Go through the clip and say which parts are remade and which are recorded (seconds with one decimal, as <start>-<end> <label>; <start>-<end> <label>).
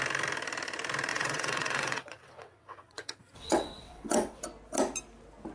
0.0-1.1 recorded; 1.1-4.4 remade; 4.4-5.5 recorded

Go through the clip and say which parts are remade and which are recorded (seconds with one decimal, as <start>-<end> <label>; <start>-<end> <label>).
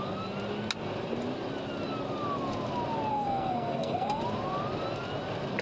0.0-3.1 recorded; 3.1-4.2 remade; 4.2-5.6 recorded